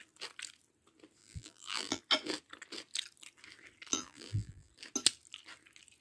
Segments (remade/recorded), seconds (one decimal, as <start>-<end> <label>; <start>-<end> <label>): 0.0-1.2 recorded; 1.2-2.0 remade; 2.0-3.9 recorded; 3.9-4.7 remade; 4.7-6.0 recorded